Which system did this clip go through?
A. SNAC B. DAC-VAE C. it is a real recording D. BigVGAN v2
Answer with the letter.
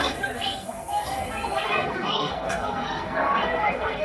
A